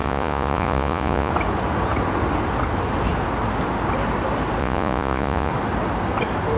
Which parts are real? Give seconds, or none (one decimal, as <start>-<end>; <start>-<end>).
1.3-4.6; 5.5-6.6